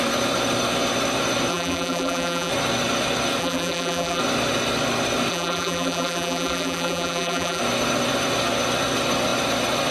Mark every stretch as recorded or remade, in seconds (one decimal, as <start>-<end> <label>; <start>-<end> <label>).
0.0-1.5 recorded; 1.5-2.5 remade; 2.5-3.4 recorded; 3.4-4.2 remade; 4.2-5.3 recorded; 5.3-7.6 remade; 7.6-9.9 recorded